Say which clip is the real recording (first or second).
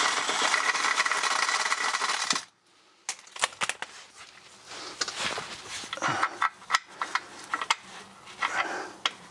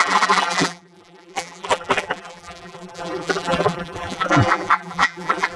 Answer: first